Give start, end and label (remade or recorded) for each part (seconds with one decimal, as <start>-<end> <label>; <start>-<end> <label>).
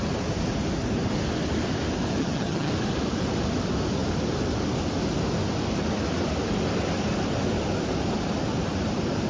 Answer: 0.0-2.2 recorded; 2.2-2.7 remade; 2.7-9.3 recorded